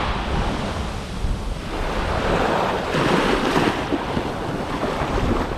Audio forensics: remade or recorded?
recorded